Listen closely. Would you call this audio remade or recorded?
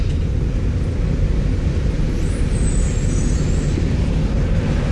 recorded